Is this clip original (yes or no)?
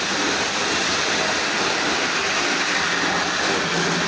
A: no